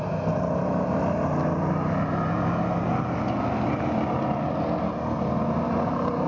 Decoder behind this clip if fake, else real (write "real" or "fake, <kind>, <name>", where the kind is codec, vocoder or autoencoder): real